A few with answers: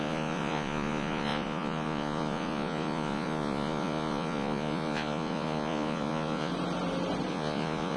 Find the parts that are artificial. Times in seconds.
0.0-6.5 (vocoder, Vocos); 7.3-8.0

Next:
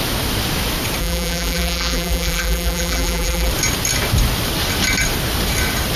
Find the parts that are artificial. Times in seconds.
1.0-3.5 (vocoder, BigVGAN v2)

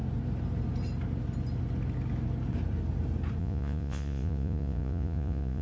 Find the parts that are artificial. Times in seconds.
3.4-5.6 (vocoder, Vocos)

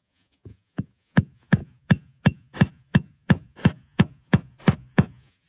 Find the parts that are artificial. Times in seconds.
0.0-5.5 (vocoder, Vocos)